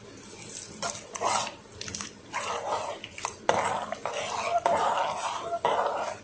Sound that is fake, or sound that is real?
real